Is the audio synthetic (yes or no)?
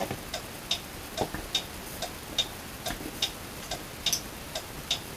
no